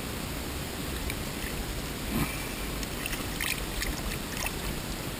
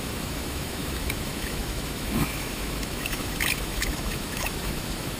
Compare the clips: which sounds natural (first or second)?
first